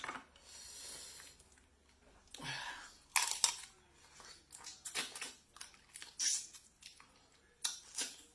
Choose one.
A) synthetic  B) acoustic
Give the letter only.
B